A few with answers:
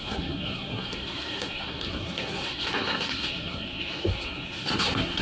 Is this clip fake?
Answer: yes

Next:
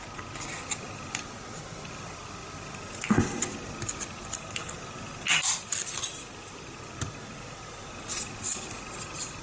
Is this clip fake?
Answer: no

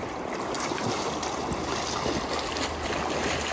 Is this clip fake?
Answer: no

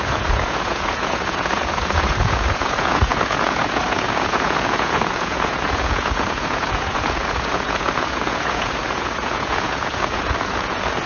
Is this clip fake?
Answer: yes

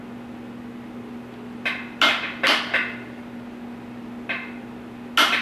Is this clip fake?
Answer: no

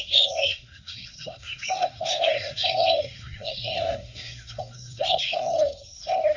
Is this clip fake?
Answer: yes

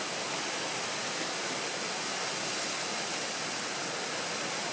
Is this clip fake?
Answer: no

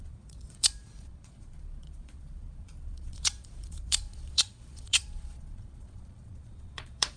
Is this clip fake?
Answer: yes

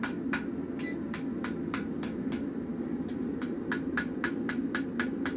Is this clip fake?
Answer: no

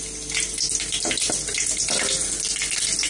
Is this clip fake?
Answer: no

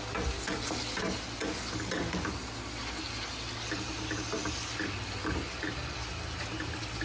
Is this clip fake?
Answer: no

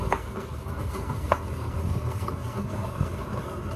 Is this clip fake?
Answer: yes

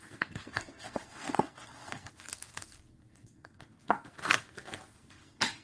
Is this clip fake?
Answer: yes